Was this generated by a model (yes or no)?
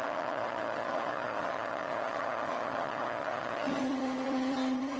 yes